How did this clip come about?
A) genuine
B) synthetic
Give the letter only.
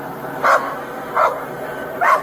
A